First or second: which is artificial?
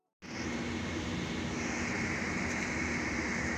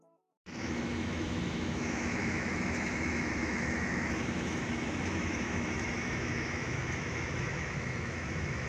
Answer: second